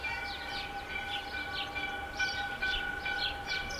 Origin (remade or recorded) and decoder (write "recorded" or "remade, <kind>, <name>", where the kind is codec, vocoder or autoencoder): recorded